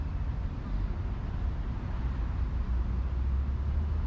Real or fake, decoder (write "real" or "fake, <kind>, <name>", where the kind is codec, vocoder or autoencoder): real